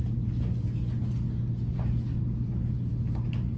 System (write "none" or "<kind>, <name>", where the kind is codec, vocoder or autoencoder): none